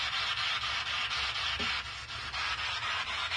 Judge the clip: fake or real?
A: real